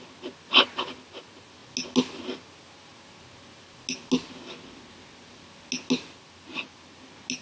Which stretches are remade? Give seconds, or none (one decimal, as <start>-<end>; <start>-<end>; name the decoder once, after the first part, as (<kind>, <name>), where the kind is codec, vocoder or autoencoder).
none